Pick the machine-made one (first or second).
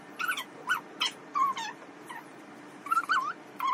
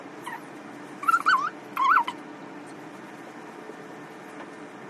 first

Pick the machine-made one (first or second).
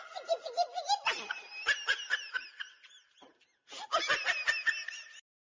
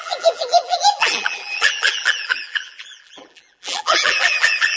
second